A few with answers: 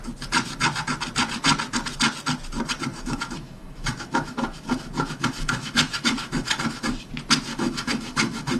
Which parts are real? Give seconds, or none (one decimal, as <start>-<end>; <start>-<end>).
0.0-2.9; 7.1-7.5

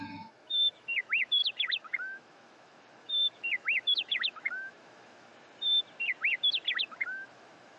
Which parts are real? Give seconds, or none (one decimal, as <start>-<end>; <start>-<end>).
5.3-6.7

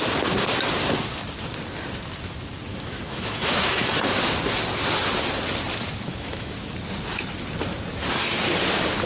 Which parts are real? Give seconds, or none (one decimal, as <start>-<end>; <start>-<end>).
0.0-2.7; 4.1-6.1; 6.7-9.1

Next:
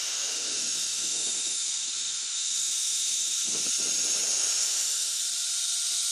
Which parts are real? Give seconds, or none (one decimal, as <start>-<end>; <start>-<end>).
3.7-4.3; 5.2-6.1

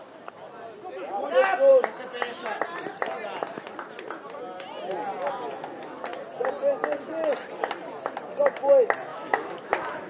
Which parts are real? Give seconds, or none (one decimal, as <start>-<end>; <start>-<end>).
0.0-9.1

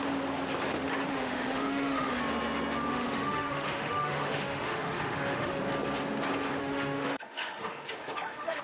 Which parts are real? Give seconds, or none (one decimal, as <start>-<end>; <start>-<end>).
0.0-1.1; 2.2-2.9; 5.6-6.6

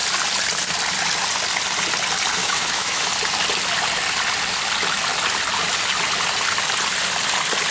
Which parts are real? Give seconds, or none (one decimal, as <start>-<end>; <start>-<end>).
0.0-2.4; 3.1-7.7

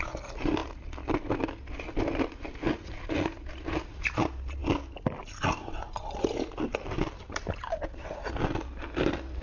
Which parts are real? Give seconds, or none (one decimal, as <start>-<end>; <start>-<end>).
0.0-9.4